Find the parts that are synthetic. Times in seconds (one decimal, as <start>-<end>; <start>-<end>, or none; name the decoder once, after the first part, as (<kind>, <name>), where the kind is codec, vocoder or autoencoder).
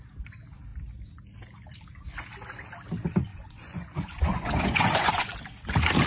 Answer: 3.3-5.3 (vocoder, Vocos)